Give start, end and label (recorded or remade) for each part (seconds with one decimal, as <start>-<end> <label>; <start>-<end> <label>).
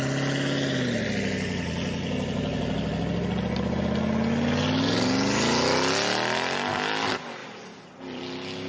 0.0-8.7 recorded